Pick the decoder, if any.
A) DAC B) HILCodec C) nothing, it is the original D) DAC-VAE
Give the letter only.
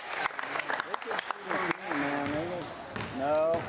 C